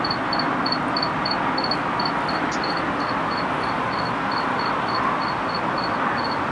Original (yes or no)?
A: yes